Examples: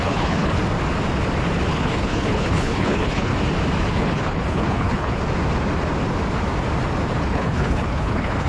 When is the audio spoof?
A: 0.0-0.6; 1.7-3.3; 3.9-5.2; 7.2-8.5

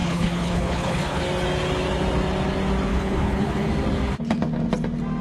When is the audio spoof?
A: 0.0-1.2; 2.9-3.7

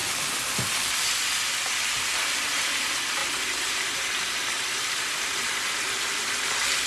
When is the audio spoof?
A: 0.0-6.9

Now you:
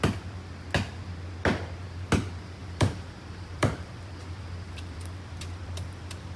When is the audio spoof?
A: 2.6-6.4

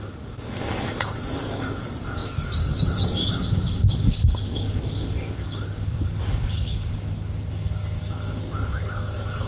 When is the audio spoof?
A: 0.0-9.5

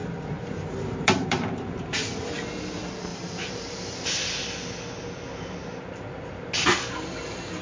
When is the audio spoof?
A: 0.0-2.3; 3.1-3.8

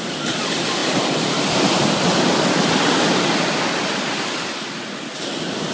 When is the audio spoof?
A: none

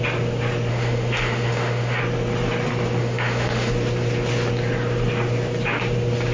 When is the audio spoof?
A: 0.7-2.0; 3.0-3.7